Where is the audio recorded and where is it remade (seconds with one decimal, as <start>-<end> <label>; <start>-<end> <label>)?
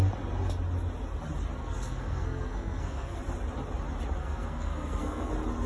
0.0-1.6 recorded; 1.6-3.2 remade; 3.2-4.2 recorded; 4.2-5.3 remade; 5.3-5.7 recorded